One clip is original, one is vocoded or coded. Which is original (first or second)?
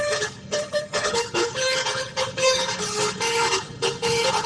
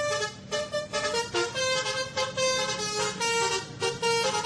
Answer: second